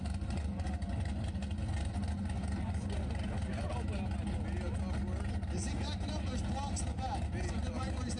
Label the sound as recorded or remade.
recorded